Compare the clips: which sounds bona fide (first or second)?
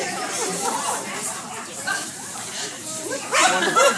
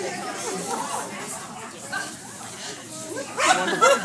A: second